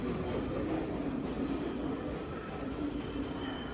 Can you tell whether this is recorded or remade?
recorded